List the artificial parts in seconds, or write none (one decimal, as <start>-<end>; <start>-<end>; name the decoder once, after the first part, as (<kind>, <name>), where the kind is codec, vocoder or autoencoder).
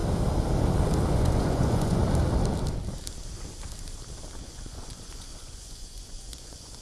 1.1-2.0 (vocoder, Vocos); 4.4-6.8